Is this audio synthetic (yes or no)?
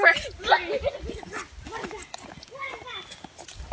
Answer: no